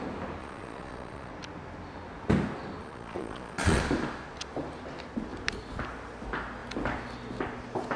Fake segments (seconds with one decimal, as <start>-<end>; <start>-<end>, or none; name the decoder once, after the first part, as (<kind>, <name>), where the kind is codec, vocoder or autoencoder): 0.4-1.3 (vocoder, Vocos); 2.8-3.8